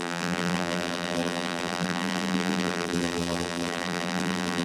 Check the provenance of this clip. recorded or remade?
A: remade